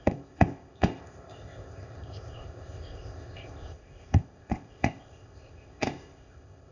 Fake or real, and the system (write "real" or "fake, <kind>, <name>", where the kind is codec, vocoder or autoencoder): fake, codec, ZipCodec